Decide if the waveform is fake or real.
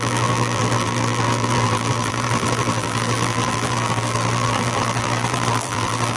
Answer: fake